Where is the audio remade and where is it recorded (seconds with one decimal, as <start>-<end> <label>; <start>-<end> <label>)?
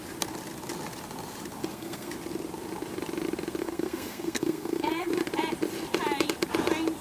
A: 0.0-1.6 recorded; 1.6-2.1 remade; 2.1-3.6 recorded; 3.6-5.1 remade; 5.1-7.0 recorded